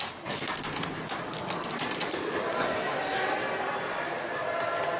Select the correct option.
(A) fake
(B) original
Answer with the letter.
B